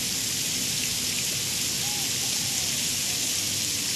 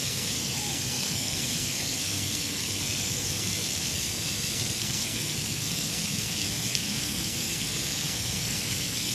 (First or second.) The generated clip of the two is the second